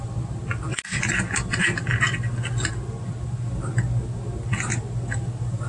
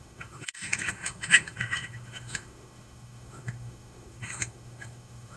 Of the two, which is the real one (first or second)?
first